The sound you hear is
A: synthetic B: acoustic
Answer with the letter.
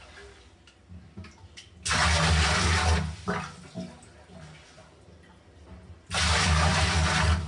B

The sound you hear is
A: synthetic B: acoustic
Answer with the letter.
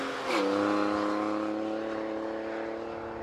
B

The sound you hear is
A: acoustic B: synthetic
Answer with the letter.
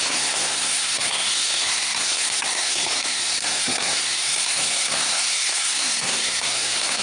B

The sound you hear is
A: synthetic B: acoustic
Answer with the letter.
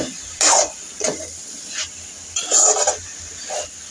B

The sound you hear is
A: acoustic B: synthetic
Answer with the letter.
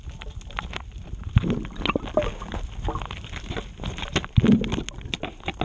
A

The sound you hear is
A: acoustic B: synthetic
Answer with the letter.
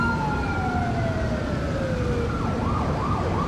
A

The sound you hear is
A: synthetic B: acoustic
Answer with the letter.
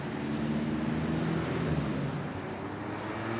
B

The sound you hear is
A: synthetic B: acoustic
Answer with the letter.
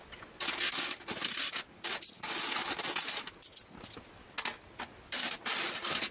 B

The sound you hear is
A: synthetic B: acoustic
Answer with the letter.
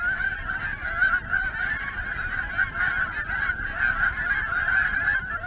B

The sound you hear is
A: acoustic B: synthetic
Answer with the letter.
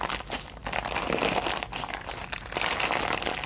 A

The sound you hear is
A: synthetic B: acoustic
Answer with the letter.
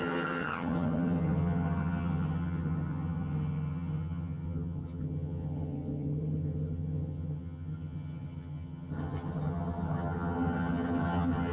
A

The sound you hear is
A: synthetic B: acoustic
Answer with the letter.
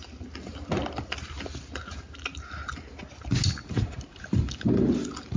B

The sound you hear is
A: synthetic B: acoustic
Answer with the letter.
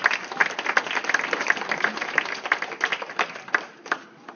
B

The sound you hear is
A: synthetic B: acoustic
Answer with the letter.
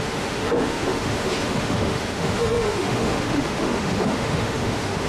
A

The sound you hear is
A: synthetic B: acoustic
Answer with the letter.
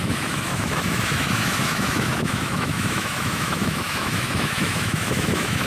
A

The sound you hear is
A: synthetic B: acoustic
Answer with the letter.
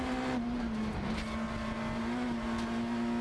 B